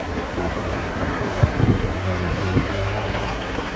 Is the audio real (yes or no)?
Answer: no